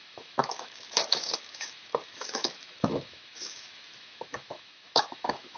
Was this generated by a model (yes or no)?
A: yes